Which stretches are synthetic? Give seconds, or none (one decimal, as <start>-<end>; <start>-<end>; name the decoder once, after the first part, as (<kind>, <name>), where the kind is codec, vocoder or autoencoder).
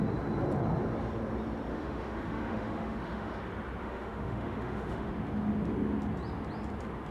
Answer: 1.7-3.4 (autoencoder, DAC-VAE); 3.8-5.1